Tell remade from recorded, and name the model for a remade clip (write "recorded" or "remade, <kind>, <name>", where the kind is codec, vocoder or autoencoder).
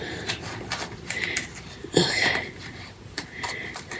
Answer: remade, vocoder, BigVGAN v2